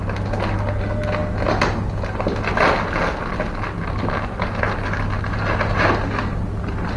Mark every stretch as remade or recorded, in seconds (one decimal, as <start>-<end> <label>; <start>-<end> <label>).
0.0-7.0 recorded